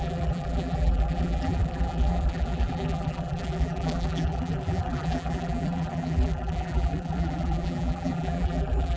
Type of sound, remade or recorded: remade